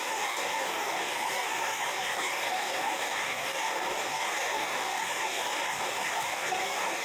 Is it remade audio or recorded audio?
remade